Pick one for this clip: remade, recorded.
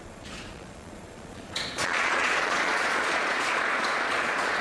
remade